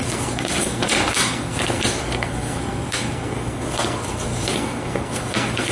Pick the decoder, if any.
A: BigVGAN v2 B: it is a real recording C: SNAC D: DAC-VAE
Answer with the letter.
C